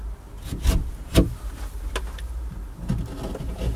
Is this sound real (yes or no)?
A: yes